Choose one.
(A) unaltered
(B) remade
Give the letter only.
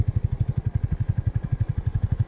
B